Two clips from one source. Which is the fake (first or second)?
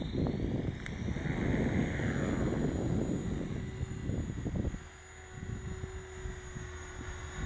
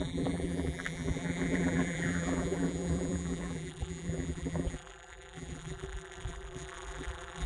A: second